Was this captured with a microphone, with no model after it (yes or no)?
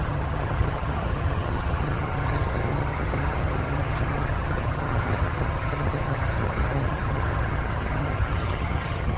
no